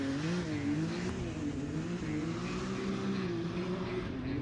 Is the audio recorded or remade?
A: recorded